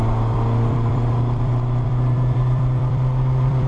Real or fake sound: fake